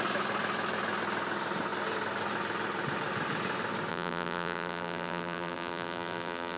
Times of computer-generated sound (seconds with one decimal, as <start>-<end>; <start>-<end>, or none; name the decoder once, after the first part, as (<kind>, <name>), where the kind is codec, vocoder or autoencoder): 3.9-6.6 (vocoder, BigVGAN v2)